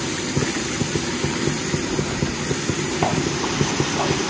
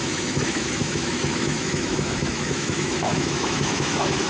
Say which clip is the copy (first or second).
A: second